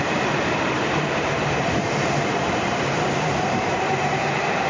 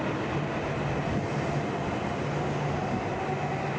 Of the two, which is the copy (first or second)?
first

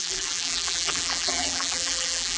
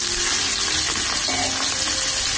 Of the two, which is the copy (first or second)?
first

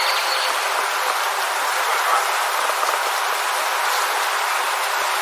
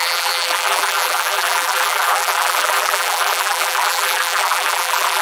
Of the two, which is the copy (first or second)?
second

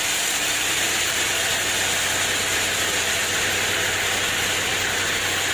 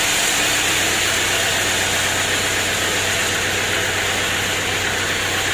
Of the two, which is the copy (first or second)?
first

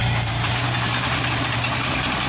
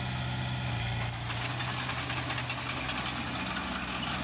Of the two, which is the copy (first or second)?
first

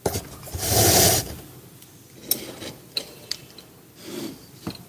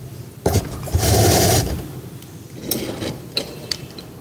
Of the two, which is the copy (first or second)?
second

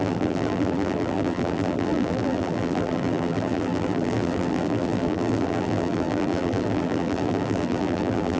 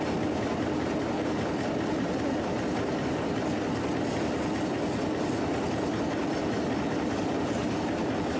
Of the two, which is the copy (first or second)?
first